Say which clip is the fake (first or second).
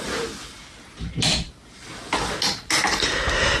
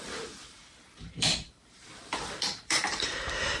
second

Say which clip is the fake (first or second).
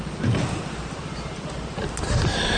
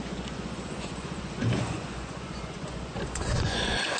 second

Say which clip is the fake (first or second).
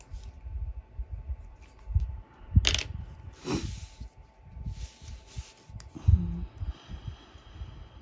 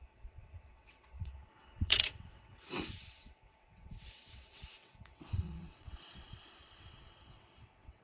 second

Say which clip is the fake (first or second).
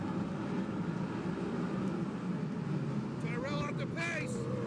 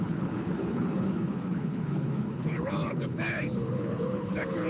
second